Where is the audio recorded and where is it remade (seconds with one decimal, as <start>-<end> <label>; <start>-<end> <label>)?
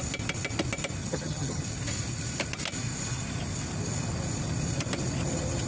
0.0-1.0 recorded; 1.0-1.6 remade; 1.6-5.7 recorded